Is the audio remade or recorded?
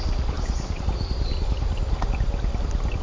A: recorded